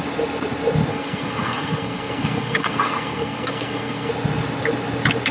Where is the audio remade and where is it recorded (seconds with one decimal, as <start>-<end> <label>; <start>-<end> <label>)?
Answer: 0.0-0.9 recorded; 0.9-4.1 remade; 4.1-5.3 recorded